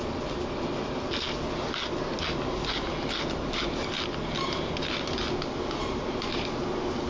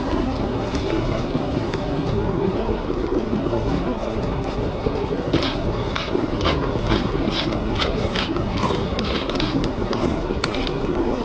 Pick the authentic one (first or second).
first